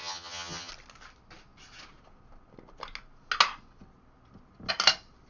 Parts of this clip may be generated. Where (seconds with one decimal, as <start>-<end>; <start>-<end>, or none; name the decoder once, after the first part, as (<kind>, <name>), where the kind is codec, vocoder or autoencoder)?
0.0-0.7 (vocoder, HiFi-GAN)